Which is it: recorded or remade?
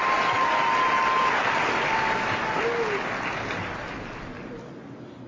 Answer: recorded